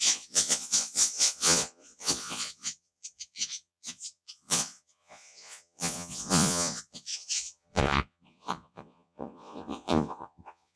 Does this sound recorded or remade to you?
remade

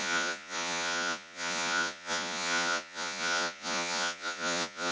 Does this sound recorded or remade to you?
remade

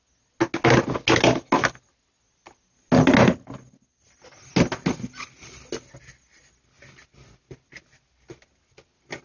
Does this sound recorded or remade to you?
recorded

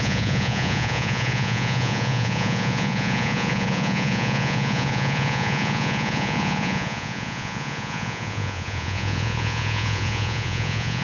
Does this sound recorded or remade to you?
remade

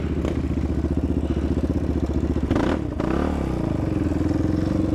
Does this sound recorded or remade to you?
recorded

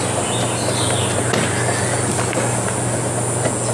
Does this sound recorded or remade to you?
recorded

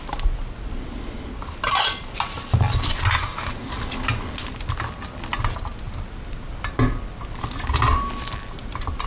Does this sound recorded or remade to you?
recorded